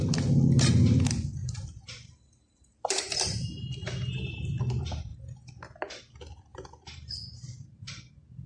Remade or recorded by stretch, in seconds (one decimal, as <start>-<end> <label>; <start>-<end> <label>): 0.0-1.4 recorded; 1.4-3.6 remade; 3.6-6.5 recorded; 6.5-8.1 remade; 8.1-8.5 recorded